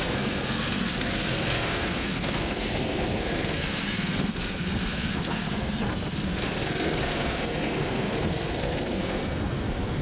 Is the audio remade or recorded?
remade